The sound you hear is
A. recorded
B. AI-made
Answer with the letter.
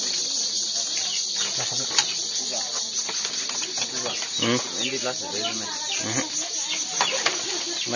A